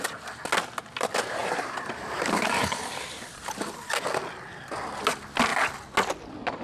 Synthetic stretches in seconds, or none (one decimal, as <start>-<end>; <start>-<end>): 1.4-4.6